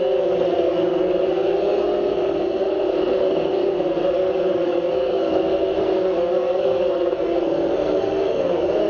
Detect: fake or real fake